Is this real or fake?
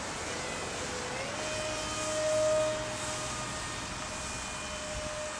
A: real